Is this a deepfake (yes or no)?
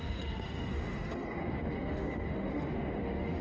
yes